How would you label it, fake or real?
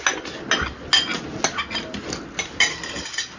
real